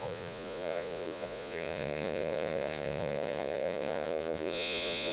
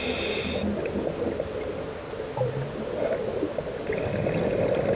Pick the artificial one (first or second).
first